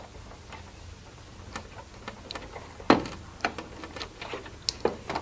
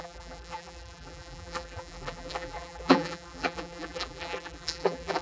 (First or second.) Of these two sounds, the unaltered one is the first